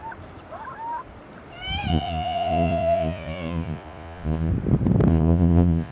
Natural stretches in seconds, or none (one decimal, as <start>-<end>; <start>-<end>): 0.0-1.9; 4.5-5.1